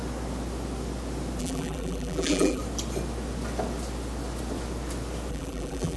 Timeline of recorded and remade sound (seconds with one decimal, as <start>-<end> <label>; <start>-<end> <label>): 0.0-1.4 recorded; 1.4-2.6 remade; 2.6-5.3 recorded; 5.3-6.0 remade